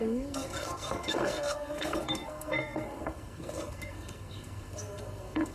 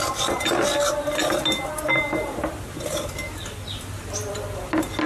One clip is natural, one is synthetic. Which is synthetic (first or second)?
first